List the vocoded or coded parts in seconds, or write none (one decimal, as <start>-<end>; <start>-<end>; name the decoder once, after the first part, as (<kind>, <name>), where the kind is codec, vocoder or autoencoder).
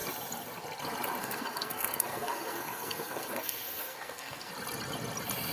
1.2-4.5 (codec, SNAC)